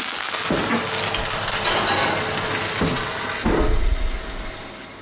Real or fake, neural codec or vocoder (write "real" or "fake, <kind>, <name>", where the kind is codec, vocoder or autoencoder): real